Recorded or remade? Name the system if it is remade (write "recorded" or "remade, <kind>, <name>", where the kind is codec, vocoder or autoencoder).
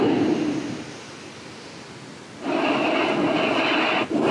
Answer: recorded